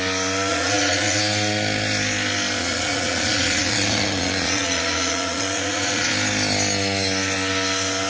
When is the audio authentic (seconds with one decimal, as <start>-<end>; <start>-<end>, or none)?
0.0-0.5; 1.2-2.6; 6.1-8.1